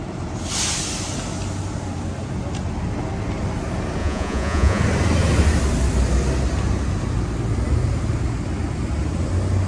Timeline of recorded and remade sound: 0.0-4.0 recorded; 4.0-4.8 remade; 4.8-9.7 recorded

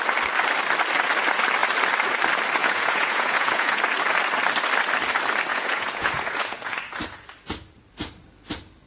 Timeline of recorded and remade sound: 0.0-2.6 recorded; 2.6-3.8 remade; 3.8-5.5 recorded; 5.5-6.8 remade; 6.8-8.9 recorded

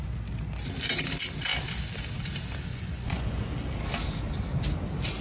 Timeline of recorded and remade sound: 0.0-2.7 recorded; 2.7-3.5 remade; 3.5-5.2 recorded

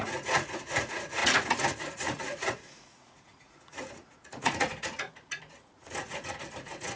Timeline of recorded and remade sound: 0.0-7.0 remade

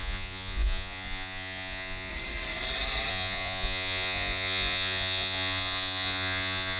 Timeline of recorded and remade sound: 0.0-2.1 remade; 2.1-3.1 recorded; 3.1-6.8 remade

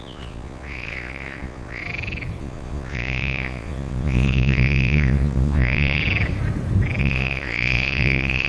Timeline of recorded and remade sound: 0.0-1.8 remade; 1.8-2.4 recorded; 2.4-6.0 remade; 6.0-7.0 recorded; 7.0-8.5 remade